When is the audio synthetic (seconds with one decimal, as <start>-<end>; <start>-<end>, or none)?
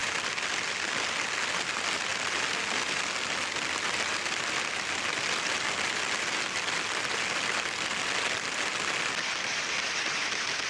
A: none